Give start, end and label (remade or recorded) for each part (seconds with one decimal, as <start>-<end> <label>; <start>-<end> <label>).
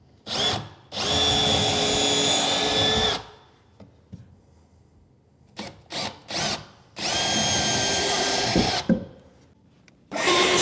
0.0-7.9 recorded; 7.9-10.6 remade